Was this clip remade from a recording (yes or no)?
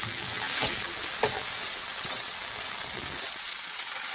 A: yes